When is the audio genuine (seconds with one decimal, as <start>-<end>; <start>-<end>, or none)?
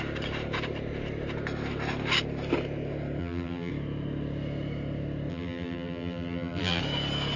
0.0-3.2; 3.7-5.3; 6.8-7.4